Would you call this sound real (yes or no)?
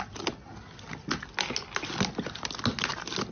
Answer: yes